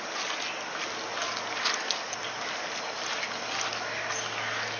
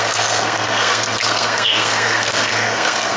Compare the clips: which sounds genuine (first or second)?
first